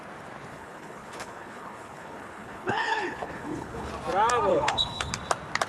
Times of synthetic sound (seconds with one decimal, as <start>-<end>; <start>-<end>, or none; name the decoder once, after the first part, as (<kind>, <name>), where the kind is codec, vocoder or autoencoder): 0.5-3.9 (codec, HILCodec); 4.5-5.1